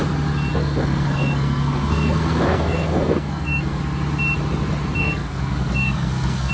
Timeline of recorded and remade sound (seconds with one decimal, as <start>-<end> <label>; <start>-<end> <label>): 0.0-0.5 recorded; 0.5-3.8 remade; 3.8-5.0 recorded; 5.0-6.5 remade